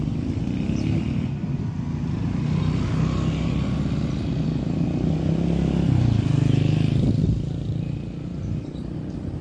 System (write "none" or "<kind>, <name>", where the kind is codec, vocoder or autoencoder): none